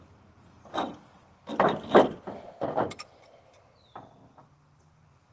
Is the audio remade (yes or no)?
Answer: no